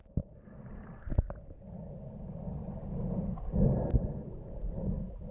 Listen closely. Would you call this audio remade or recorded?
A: recorded